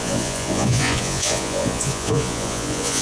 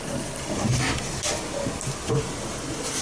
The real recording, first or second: second